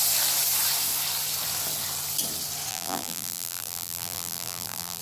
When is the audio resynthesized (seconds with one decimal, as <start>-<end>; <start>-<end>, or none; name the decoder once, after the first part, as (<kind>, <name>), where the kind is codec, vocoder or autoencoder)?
2.7-5.0 (vocoder, BigVGAN v2)